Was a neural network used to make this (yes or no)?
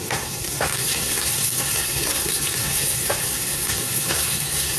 yes